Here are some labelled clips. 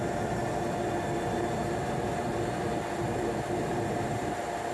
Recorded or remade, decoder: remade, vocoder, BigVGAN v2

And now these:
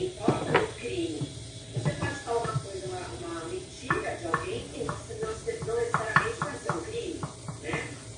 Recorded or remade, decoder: recorded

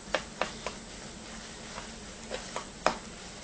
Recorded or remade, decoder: recorded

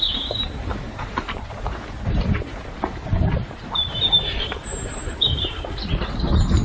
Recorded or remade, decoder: remade, vocoder, BigVGAN v2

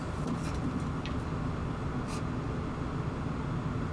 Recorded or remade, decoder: recorded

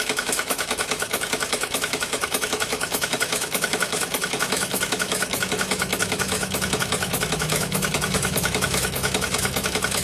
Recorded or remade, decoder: remade, autoencoder, DAC-VAE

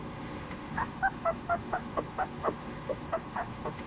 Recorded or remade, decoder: remade, autoencoder, DAC-VAE